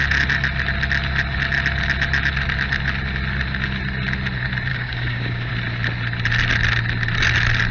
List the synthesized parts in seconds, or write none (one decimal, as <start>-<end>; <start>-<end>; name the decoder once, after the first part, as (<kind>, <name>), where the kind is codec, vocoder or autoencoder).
4.7-5.5 (codec, DAC)